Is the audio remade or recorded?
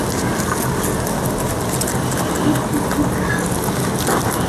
recorded